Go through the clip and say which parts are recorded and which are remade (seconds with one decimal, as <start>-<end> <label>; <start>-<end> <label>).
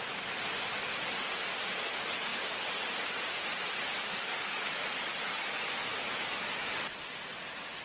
0.0-4.1 recorded; 4.1-6.7 remade; 6.7-7.8 recorded